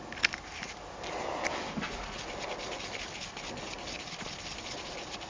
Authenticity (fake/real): real